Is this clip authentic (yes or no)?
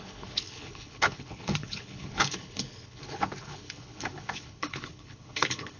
no